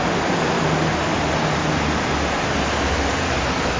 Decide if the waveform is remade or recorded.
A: recorded